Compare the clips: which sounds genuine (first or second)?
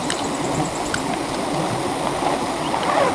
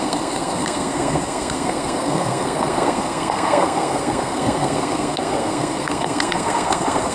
first